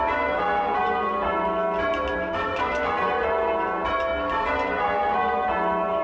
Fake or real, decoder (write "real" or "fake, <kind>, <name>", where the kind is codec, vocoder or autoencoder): real